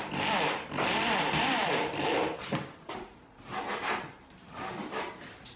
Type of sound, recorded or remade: remade